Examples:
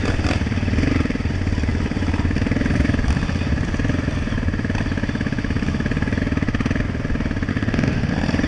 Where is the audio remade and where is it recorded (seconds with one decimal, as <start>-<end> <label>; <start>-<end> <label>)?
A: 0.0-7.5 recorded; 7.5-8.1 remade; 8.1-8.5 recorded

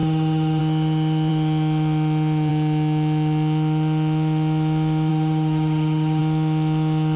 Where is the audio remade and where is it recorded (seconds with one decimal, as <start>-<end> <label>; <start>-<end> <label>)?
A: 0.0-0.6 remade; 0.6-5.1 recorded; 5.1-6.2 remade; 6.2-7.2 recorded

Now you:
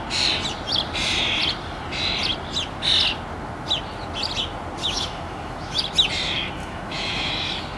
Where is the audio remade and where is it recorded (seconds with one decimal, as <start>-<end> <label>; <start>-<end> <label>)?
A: 0.0-4.8 recorded; 4.8-5.8 remade; 5.8-6.6 recorded; 6.6-7.3 remade; 7.3-7.8 recorded

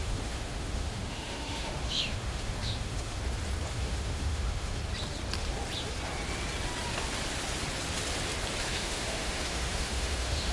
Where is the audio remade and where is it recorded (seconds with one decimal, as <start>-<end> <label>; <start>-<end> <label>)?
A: 0.0-3.2 remade; 3.2-3.7 recorded; 3.7-4.8 remade; 4.8-8.6 recorded; 8.6-10.5 remade

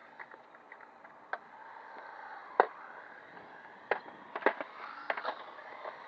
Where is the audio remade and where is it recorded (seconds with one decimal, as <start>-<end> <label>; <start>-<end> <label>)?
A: 0.0-6.1 recorded

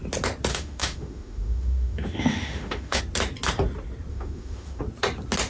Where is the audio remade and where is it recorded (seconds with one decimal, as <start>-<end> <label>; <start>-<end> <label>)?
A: 0.0-0.5 recorded; 0.5-3.0 remade; 3.0-4.1 recorded; 4.1-4.8 remade; 4.8-5.5 recorded